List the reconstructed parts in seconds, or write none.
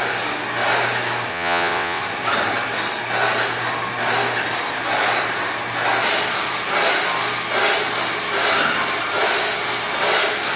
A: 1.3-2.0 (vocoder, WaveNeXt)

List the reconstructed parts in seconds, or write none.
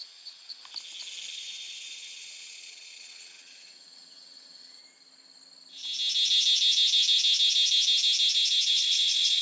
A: 0.0-0.6 (vocoder, WaveNeXt); 1.3-4.8; 8.7-9.4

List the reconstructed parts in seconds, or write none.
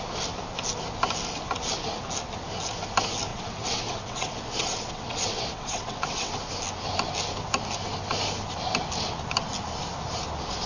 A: 3.3-6.3 (vocoder, WaveNeXt)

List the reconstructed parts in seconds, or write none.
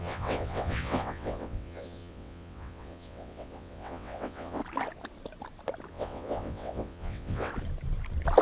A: 0.0-4.6 (vocoder, WaveNeXt); 5.9-7.5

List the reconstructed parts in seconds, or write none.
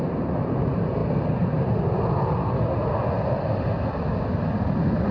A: none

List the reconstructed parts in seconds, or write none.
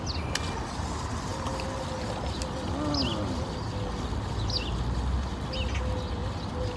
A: none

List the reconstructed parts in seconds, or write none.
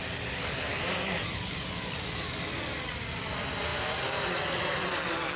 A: none